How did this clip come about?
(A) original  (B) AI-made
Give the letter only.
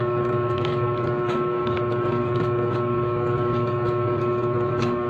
B